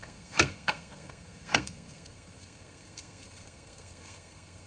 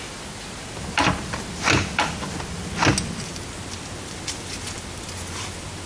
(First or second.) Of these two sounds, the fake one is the first